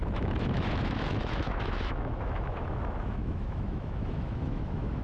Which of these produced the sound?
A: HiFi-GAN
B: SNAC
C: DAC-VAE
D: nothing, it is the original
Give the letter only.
C